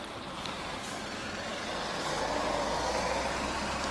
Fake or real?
real